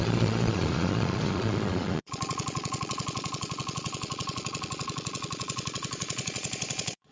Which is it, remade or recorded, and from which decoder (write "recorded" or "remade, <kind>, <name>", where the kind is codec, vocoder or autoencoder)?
remade, vocoder, Vocos